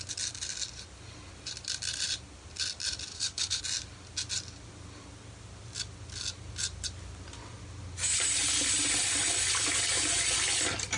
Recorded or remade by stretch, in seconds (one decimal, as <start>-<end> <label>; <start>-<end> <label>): 0.0-3.1 recorded; 3.1-3.6 remade; 3.6-11.0 recorded